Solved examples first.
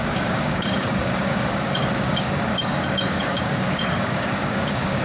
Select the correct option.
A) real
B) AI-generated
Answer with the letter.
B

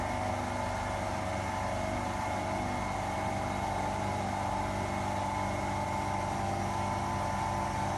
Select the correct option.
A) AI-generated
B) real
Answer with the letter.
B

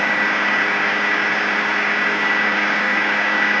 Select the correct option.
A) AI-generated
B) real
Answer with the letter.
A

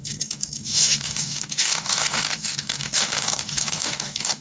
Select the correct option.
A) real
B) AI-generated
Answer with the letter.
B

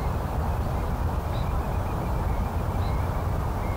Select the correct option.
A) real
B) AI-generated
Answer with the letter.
A